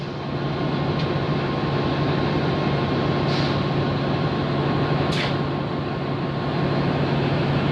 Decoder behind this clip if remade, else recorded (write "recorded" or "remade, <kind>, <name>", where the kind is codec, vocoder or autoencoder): recorded